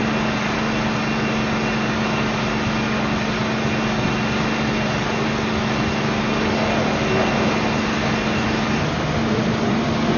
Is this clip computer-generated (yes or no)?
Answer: no